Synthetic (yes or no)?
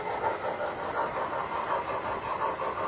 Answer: no